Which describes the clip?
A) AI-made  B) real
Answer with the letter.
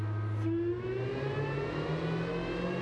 B